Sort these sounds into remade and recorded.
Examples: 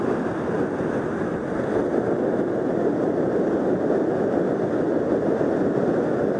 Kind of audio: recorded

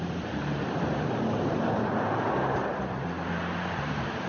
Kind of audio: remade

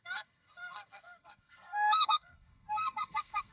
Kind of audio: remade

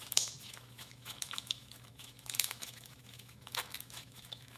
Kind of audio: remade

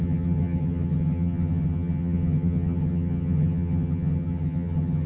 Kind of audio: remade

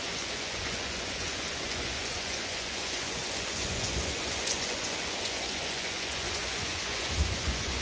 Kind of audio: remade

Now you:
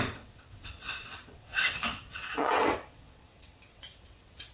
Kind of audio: remade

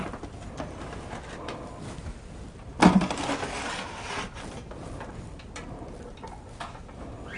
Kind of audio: recorded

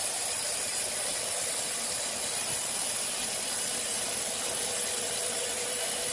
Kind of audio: recorded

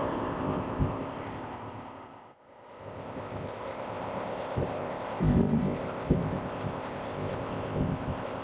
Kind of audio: remade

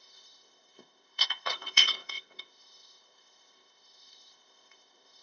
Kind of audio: remade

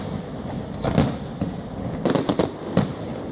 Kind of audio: recorded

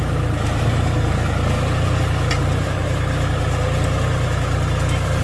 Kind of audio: recorded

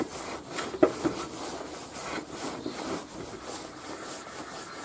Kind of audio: recorded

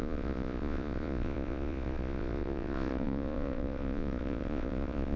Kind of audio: remade